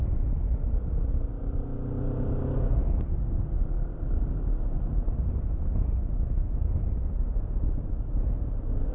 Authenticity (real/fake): real